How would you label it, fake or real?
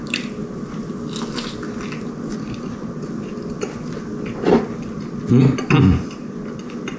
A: real